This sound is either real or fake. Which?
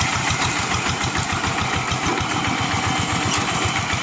real